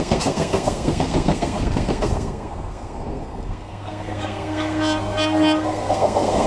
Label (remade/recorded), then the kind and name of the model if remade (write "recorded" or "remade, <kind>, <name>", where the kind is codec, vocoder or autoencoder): remade, codec, SNAC